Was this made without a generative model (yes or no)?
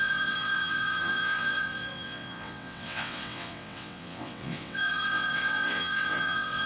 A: no